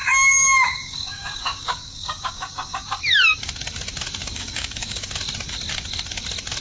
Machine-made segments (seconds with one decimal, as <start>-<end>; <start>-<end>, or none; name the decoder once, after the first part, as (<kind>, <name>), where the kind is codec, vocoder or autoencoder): 0.0-3.0 (codec, DAC); 4.2-5.1